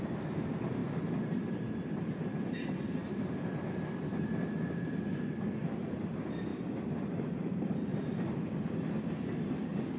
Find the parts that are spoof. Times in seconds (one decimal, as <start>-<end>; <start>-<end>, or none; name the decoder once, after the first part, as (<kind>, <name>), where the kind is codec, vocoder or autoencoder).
0.0-0.8 (vocoder, BigVGAN v2); 2.2-3.0; 6.1-10.0